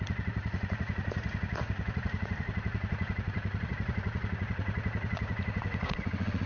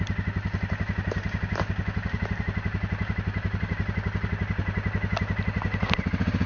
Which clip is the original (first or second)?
second